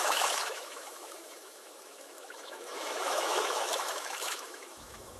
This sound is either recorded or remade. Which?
remade